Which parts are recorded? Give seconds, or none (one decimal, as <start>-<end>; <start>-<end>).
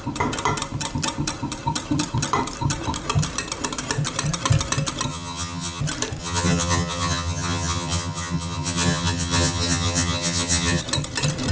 0.0-5.1; 5.8-6.2; 10.8-11.5